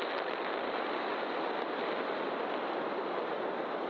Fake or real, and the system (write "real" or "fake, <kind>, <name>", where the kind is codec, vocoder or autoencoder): real